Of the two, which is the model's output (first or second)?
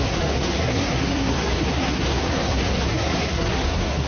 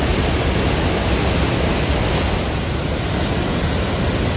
first